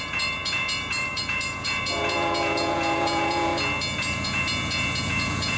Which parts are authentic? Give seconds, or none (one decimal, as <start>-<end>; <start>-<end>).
3.5-4.0